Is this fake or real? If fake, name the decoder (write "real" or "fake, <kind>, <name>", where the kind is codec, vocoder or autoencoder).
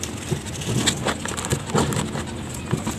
real